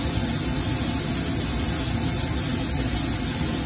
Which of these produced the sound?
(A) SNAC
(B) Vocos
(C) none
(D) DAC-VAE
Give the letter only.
C